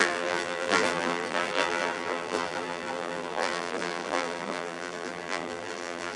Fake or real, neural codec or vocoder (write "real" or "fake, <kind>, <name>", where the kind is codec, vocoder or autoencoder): fake, vocoder, BigVGAN v2